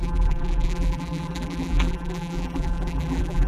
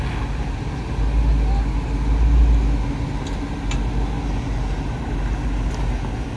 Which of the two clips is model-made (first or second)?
first